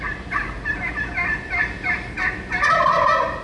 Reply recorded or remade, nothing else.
recorded